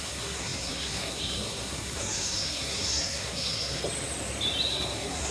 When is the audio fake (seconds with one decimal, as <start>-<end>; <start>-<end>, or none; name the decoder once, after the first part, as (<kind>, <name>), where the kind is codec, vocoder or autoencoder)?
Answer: 0.0-3.8 (codec, SNAC); 4.7-5.3

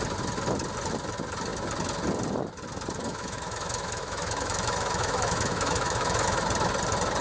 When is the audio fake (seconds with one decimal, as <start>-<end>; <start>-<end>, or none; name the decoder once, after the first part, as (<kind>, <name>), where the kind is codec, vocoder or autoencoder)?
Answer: 3.0-6.4 (autoencoder, DAC-VAE)

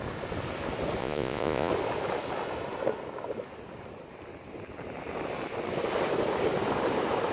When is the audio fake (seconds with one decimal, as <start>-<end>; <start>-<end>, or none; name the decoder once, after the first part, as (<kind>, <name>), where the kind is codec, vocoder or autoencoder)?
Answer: 1.0-1.7 (vocoder, Vocos)

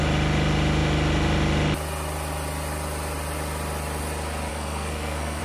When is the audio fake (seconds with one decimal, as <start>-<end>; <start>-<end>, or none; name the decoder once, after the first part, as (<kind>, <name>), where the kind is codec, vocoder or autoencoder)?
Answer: 4.5-5.4 (codec, SNAC)

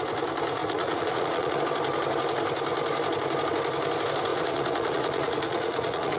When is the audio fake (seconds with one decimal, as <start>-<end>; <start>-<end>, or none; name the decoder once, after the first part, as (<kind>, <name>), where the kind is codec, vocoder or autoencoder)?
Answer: 0.6-1.6 (vocoder, Vocos); 4.3-6.2

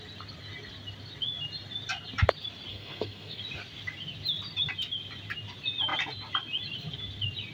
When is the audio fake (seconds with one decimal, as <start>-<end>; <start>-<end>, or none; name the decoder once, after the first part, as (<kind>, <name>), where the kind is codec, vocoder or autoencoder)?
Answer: 2.7-3.4 (codec, SNAC)

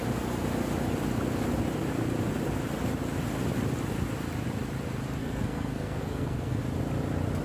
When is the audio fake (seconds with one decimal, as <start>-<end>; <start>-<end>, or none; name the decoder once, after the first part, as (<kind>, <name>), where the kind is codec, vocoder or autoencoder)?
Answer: 5.2-6.6 (codec, SNAC)